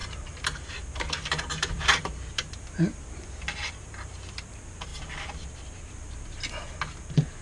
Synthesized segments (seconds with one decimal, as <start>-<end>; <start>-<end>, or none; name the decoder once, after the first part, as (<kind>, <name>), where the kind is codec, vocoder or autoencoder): 0.0-4.4 (vocoder, BigVGAN v2)